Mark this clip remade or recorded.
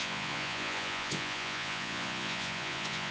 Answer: remade